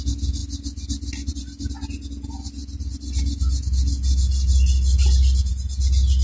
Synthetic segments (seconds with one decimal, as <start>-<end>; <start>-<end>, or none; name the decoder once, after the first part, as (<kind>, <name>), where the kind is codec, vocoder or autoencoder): none